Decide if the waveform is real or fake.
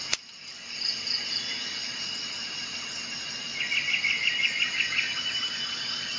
real